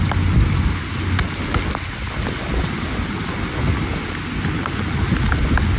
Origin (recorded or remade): recorded